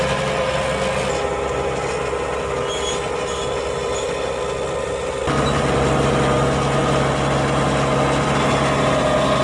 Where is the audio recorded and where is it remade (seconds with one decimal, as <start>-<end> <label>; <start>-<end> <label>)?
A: 0.0-9.4 recorded